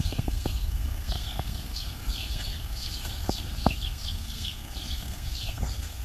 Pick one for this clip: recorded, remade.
remade